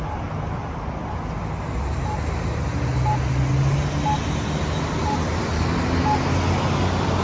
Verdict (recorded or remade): recorded